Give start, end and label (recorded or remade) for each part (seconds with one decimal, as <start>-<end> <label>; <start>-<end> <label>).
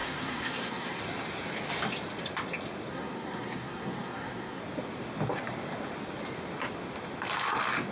0.0-1.0 remade; 1.0-2.9 recorded; 2.9-4.6 remade; 4.6-7.9 recorded